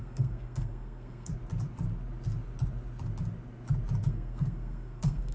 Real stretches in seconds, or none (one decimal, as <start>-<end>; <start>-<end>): 1.3-4.0

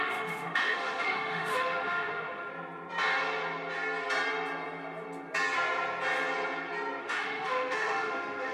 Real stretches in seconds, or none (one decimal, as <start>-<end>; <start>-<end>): 2.5-7.0